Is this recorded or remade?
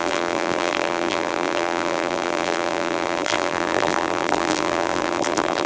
remade